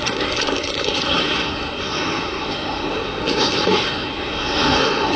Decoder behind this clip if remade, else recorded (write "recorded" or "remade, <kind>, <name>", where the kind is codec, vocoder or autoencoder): remade, codec, SNAC